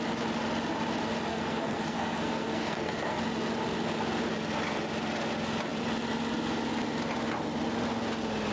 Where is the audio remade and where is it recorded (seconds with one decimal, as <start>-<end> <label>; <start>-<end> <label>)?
0.0-1.3 recorded; 1.3-3.2 remade; 3.2-8.5 recorded